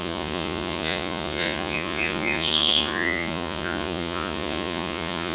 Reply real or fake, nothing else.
fake